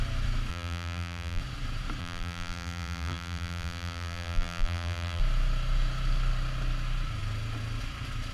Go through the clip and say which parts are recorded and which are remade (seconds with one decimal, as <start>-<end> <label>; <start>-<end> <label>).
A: 0.0-0.5 recorded; 0.5-1.4 remade; 1.4-2.0 recorded; 2.0-5.2 remade; 5.2-8.3 recorded